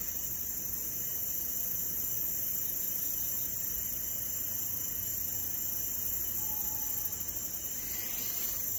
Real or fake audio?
real